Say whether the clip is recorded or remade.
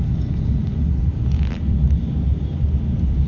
recorded